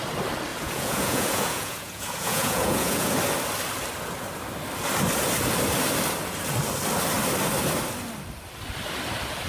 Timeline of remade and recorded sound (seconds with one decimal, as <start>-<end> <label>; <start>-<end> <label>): 0.0-0.5 recorded; 0.5-3.1 remade; 3.1-9.5 recorded